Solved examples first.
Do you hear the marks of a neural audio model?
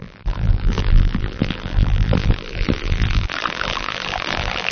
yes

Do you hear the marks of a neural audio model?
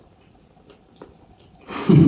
yes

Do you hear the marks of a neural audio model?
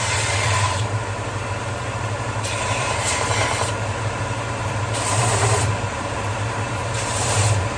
yes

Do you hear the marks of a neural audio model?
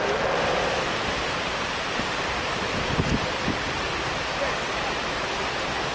no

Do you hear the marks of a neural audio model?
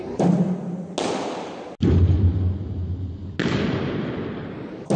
no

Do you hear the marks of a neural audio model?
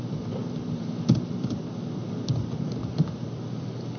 yes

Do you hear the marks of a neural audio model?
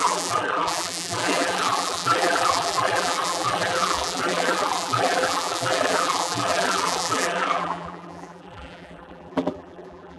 yes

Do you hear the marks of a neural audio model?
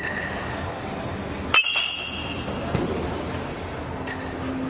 no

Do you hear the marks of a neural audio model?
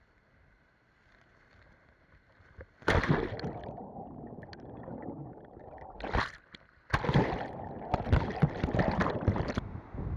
no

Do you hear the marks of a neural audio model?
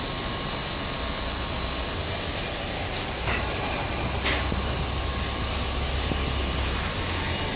no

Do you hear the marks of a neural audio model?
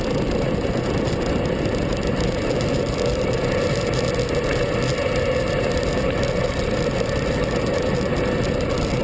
no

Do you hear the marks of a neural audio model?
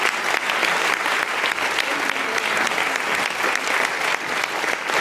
no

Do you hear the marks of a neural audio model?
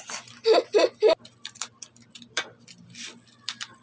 yes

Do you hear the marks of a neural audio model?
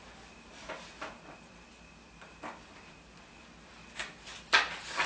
no